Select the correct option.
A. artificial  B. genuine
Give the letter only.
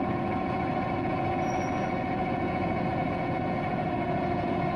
A